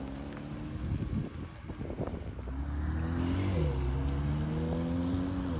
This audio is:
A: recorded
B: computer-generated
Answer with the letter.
A